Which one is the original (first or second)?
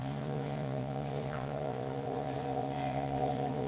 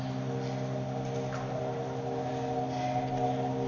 second